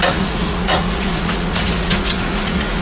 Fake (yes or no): yes